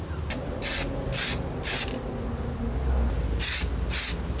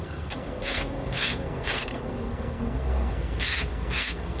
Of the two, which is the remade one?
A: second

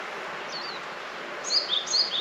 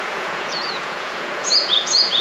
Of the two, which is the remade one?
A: second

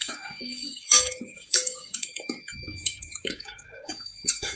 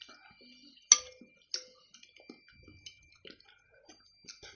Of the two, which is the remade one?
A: first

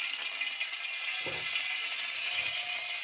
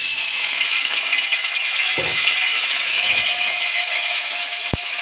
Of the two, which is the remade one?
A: second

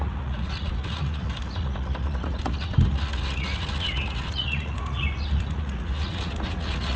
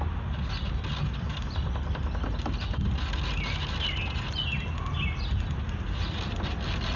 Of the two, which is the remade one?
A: first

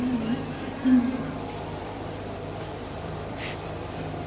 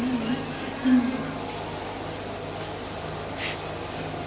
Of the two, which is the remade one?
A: first